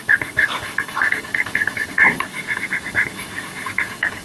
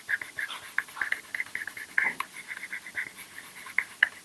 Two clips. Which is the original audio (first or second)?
second